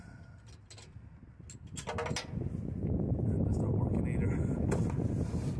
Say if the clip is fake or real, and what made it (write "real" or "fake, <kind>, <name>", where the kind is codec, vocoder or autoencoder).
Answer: real